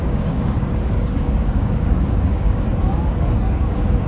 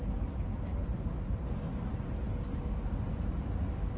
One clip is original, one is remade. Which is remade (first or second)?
first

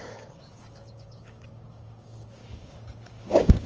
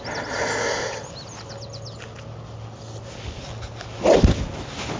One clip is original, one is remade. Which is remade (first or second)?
first